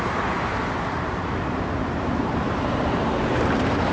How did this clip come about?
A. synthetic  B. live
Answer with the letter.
A